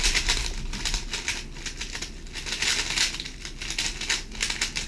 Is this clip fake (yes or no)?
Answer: no